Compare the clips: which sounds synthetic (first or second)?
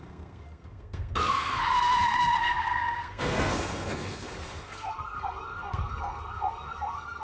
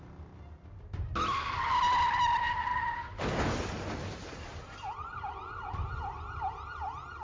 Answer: first